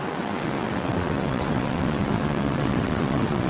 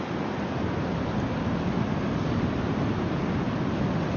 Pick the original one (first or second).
second